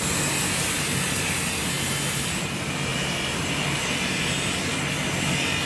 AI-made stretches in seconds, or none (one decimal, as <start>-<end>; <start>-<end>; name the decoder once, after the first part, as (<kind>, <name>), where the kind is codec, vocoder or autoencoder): 1.6-2.4 (vocoder, BigVGAN v2); 2.9-3.5